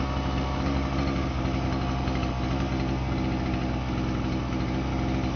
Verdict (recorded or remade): recorded